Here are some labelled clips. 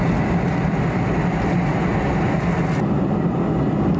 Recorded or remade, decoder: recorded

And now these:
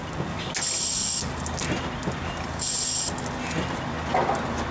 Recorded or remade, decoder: recorded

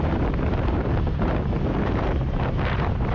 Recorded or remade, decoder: remade, vocoder, BigVGAN v2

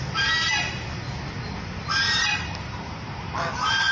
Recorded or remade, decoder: recorded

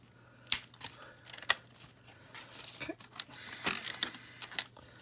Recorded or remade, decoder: recorded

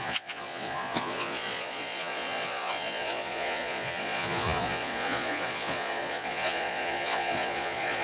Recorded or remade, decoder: remade, vocoder, Vocos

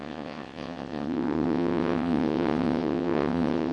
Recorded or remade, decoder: remade, vocoder, WaveNeXt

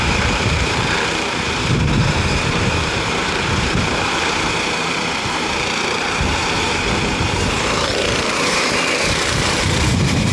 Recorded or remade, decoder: remade, vocoder, BigVGAN v2